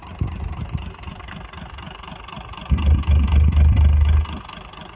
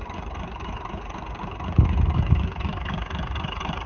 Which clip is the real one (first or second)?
first